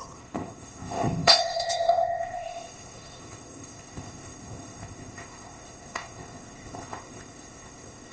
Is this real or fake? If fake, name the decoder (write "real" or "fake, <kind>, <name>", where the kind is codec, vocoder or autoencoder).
fake, codec, ZipCodec